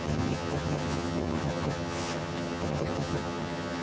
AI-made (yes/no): yes